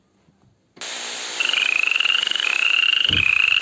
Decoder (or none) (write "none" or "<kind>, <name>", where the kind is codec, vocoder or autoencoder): none